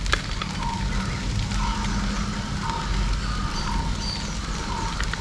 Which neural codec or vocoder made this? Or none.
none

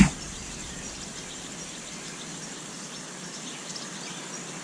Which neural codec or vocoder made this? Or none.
none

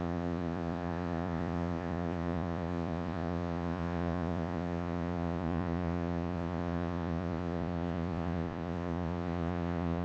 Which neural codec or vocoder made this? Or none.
vocoder, Vocos